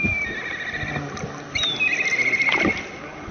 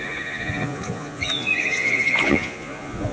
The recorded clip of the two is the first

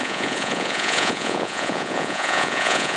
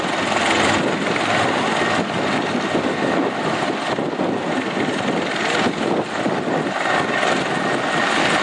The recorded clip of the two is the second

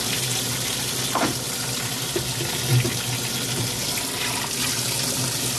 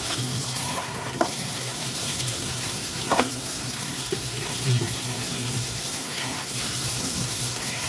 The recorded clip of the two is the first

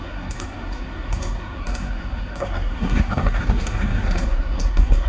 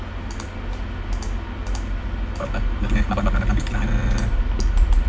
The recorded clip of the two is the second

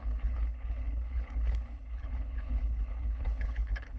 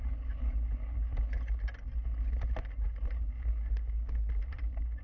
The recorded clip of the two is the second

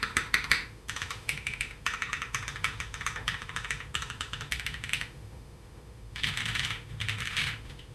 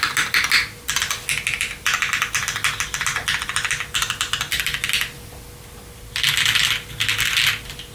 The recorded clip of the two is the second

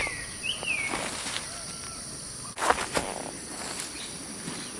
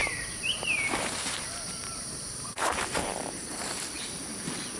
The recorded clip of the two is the first